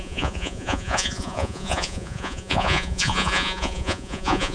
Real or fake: fake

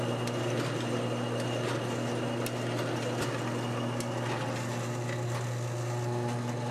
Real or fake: real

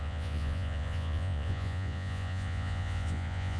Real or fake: fake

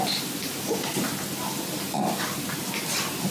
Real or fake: real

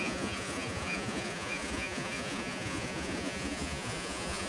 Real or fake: fake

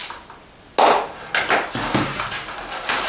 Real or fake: real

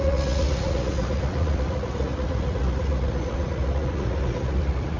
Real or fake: fake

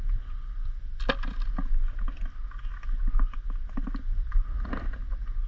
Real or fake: real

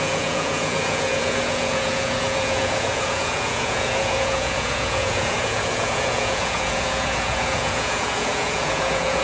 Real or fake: fake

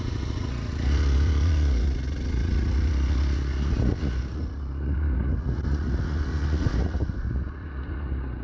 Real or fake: fake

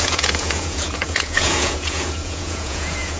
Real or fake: fake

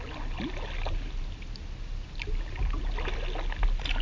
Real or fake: real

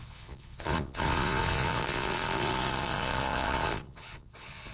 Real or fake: fake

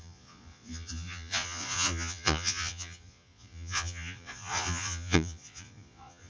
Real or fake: fake